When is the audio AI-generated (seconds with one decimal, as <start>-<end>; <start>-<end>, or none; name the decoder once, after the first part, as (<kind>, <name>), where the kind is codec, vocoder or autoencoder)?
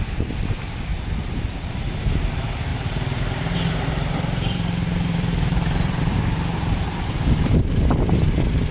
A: 0.9-2.1 (vocoder, BigVGAN v2); 2.7-7.9